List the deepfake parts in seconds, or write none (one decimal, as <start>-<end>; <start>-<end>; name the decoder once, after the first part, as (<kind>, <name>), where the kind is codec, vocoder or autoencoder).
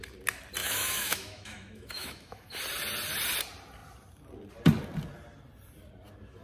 0.6-2.6 (autoencoder, DAC-VAE)